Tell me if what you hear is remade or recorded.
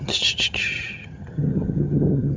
remade